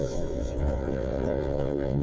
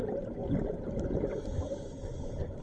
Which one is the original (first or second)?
second